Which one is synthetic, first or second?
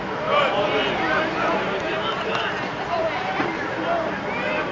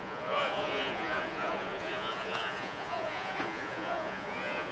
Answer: second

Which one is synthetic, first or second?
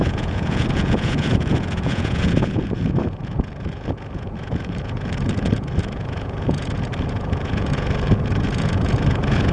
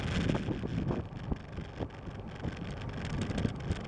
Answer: first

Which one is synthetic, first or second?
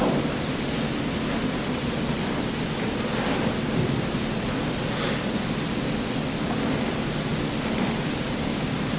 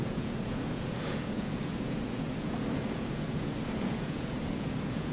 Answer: second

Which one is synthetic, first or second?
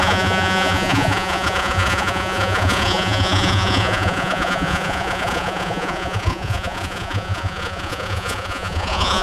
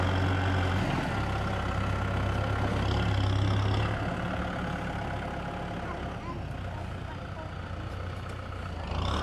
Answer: first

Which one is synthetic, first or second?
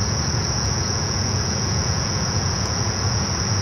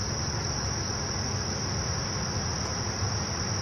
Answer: first